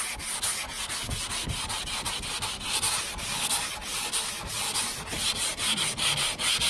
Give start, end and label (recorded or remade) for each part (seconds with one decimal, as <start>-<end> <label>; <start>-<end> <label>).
0.0-3.1 recorded; 3.1-3.7 remade; 3.7-6.7 recorded